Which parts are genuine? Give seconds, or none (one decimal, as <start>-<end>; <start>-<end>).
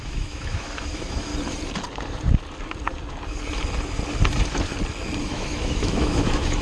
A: 1.3-5.2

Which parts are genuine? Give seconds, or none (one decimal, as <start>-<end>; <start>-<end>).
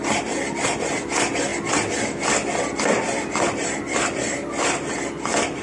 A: 0.0-5.6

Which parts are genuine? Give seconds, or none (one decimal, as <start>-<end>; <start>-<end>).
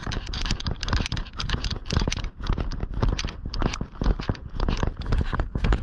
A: 2.8-4.6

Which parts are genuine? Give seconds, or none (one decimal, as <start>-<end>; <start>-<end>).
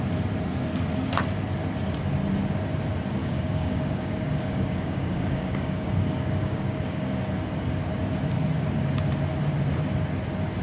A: 0.0-3.2; 7.2-10.6